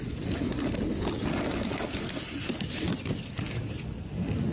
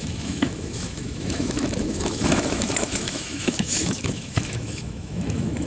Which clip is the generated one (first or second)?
second